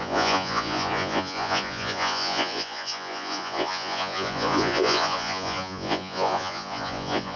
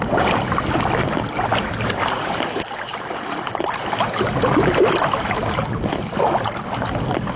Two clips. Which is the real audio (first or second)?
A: second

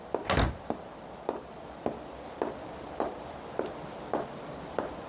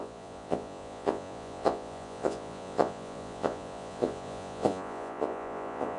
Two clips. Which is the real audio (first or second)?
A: first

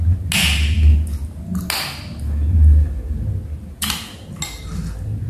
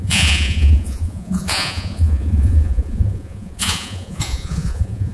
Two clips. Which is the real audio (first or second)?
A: first